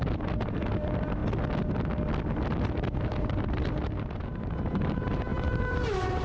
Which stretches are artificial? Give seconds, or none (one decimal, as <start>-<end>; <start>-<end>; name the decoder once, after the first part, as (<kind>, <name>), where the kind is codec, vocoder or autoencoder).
0.0-1.2 (vocoder, BigVGAN v2); 2.2-6.2